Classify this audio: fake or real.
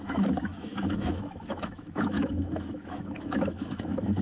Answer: fake